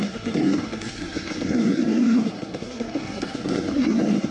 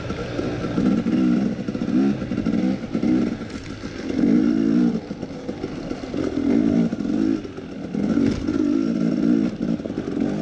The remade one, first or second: first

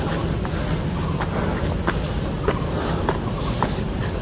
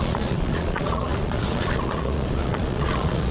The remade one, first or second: second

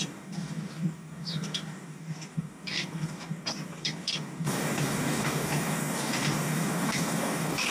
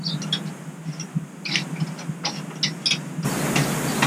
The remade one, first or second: first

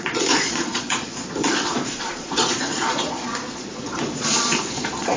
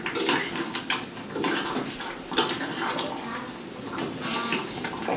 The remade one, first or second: first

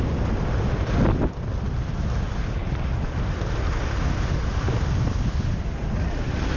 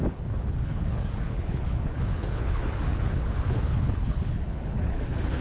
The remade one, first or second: second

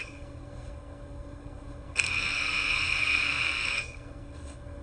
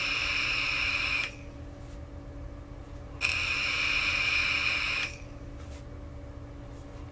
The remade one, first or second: first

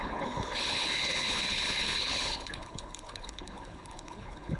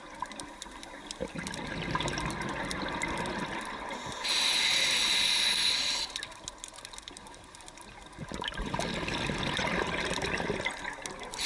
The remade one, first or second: first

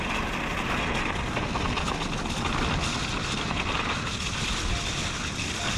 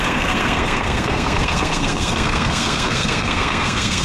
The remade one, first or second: second